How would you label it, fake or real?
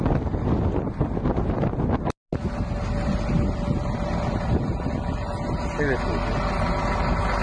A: real